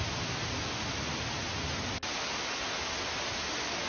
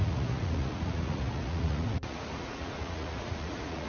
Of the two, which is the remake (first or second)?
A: second